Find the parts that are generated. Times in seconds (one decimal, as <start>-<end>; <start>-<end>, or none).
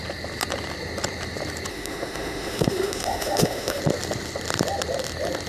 1.7-3.8